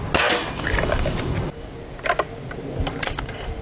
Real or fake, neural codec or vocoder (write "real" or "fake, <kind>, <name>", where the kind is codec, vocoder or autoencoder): real